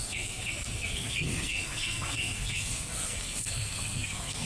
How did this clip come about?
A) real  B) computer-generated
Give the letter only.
B